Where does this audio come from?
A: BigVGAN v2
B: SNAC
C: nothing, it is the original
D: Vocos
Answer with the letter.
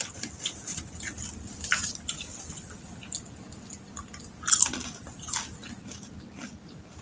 C